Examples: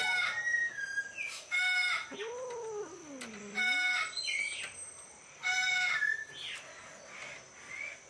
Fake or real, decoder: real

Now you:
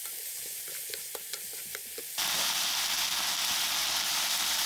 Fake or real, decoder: real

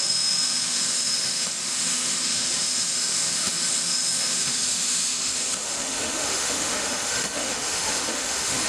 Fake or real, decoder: fake, autoencoder, DAC-VAE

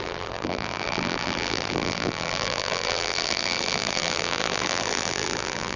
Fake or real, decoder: fake, vocoder, BigVGAN v2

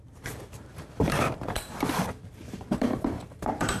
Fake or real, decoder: fake, vocoder, BigVGAN v2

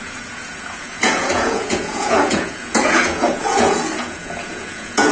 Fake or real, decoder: fake, vocoder, Vocos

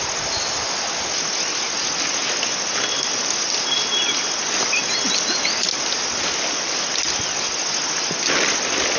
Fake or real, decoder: real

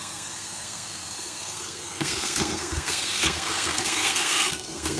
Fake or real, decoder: fake, codec, SNAC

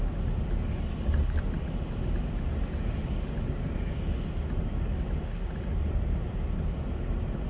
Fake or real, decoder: real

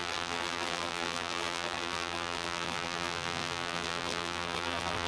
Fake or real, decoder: fake, vocoder, BigVGAN v2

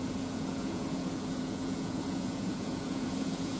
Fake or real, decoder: fake, vocoder, Vocos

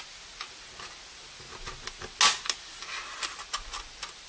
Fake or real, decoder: real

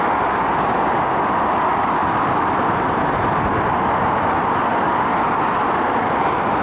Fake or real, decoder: real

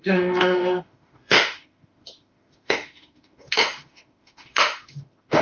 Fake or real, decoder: fake, autoencoder, DAC-VAE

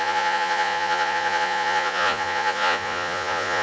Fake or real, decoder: fake, vocoder, Vocos